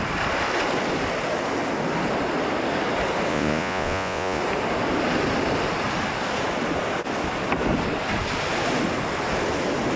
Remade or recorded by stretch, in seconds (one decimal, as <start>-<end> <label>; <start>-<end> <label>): 0.0-3.3 recorded; 3.3-4.4 remade; 4.4-10.0 recorded